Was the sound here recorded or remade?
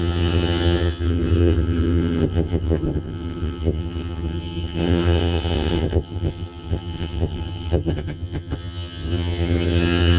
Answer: remade